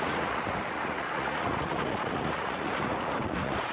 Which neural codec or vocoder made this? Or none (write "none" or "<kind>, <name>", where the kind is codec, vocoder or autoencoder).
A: vocoder, Vocos